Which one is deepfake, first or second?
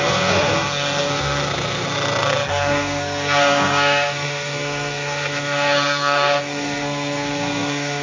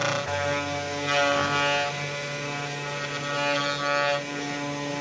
first